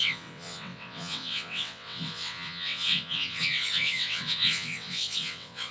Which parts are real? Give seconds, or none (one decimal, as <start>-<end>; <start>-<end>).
none